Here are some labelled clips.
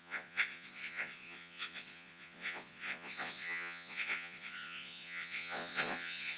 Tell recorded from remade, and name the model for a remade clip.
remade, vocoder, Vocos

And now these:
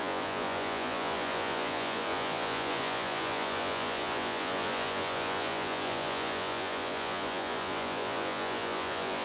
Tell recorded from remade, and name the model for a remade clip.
remade, vocoder, Vocos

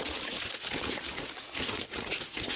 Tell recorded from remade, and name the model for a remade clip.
remade, vocoder, Vocos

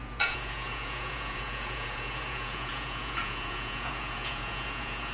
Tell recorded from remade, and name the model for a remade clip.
remade, vocoder, Vocos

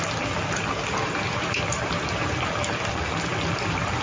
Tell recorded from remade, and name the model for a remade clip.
recorded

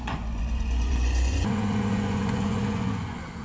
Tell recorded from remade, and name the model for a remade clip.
remade, vocoder, Vocos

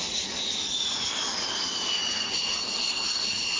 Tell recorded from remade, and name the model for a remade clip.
recorded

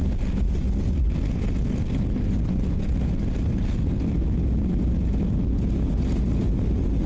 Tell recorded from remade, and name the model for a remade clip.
recorded